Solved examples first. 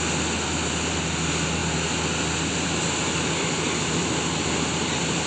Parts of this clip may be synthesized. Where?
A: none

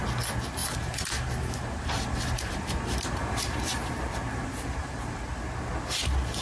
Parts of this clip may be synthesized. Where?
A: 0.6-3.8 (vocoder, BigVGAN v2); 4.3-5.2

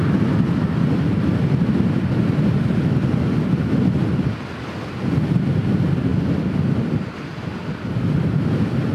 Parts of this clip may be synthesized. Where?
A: 6.1-8.4 (vocoder, BigVGAN v2)

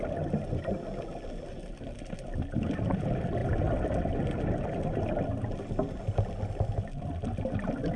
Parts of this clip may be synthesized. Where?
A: 3.4-4.2 (vocoder, BigVGAN v2)

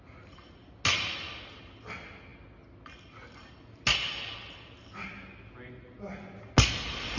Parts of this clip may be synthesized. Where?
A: none